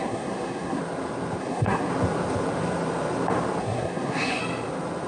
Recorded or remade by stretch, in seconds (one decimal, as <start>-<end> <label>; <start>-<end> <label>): 0.0-0.8 remade; 0.8-1.4 recorded; 1.4-1.9 remade; 1.9-3.6 recorded; 3.6-4.4 remade; 4.4-5.1 recorded